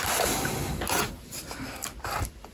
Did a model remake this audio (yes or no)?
no